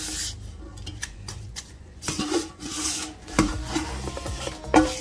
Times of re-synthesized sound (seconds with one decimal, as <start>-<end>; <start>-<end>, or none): 0.7-3.7